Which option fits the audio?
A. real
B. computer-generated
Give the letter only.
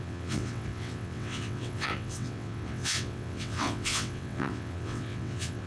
B